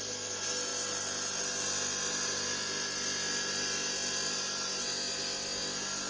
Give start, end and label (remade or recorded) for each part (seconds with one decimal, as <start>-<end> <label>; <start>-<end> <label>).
0.0-6.1 recorded